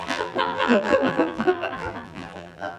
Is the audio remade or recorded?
remade